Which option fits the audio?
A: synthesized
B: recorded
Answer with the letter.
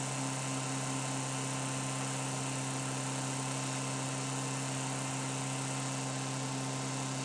B